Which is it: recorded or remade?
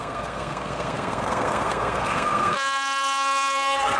remade